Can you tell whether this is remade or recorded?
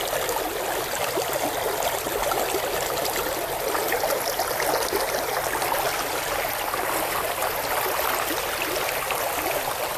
recorded